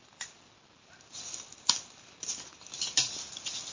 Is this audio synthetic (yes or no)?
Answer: no